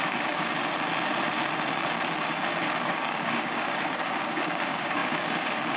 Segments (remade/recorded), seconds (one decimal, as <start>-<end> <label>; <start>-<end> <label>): 0.0-0.6 remade; 0.6-2.8 recorded; 2.8-5.8 remade